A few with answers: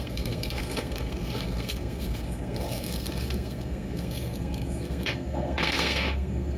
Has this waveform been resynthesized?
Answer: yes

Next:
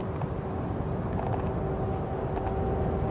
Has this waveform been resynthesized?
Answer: no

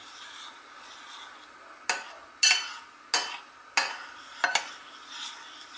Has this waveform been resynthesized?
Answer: no